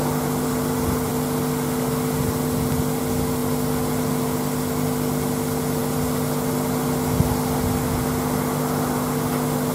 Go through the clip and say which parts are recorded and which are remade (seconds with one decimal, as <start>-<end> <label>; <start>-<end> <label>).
0.0-9.7 recorded